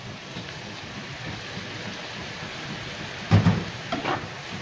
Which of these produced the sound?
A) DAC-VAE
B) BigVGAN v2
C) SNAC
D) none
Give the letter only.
B